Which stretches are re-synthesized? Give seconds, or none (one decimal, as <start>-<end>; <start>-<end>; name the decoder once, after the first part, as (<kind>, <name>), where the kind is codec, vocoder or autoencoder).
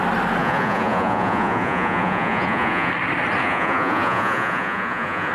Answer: 0.4-2.9 (vocoder, Vocos); 3.4-5.3